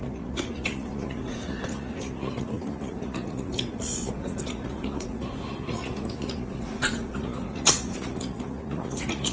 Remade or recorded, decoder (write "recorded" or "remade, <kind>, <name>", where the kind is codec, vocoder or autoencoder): remade, vocoder, Vocos